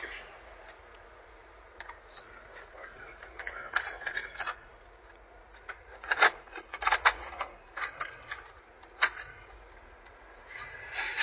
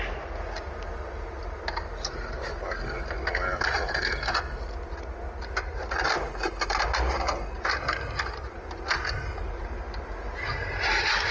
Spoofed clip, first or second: first